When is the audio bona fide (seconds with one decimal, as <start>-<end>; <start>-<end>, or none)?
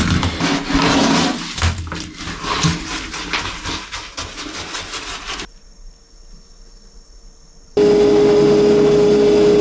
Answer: 0.0-9.6